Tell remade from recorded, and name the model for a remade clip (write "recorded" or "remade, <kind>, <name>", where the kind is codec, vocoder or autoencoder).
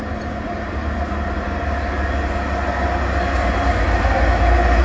recorded